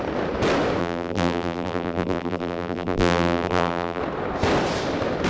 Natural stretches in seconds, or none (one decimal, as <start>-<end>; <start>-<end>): 0.0-0.8; 4.0-5.3